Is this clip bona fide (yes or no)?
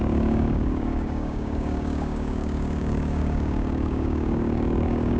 no